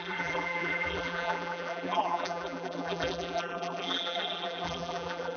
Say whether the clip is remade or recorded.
remade